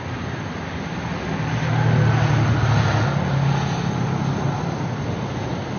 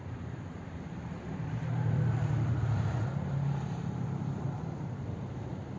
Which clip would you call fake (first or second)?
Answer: second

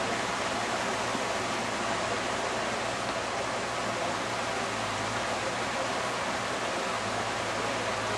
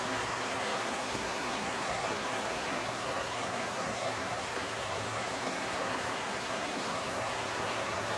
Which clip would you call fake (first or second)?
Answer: second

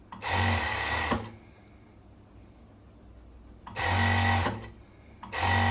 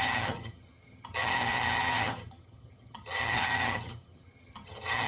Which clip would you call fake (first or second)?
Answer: second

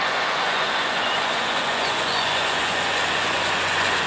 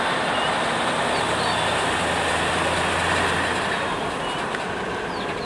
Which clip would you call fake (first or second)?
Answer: first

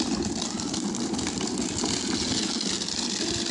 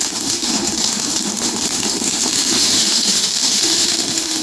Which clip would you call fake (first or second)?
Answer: second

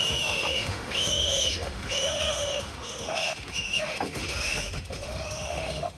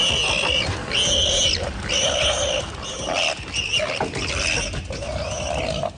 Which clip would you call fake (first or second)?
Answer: first